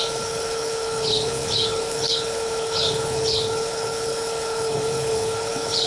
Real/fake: fake